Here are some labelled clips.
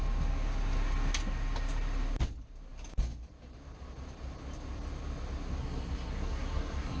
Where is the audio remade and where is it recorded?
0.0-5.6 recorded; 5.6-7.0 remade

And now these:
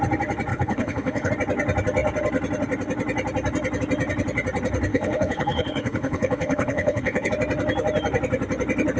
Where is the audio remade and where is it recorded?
0.0-0.5 recorded; 0.5-1.3 remade; 1.3-4.9 recorded; 4.9-7.3 remade; 7.3-9.0 recorded